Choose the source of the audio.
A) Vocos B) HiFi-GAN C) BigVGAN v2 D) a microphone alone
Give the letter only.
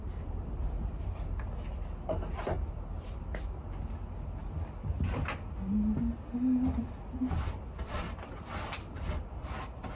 D